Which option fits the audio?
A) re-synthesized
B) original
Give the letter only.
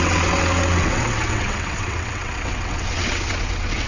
A